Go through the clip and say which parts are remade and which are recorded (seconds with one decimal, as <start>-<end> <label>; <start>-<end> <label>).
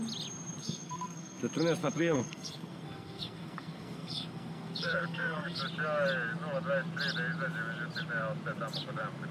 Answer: 0.0-0.6 recorded; 0.6-1.4 remade; 1.4-1.8 recorded; 1.8-5.6 remade; 5.6-9.3 recorded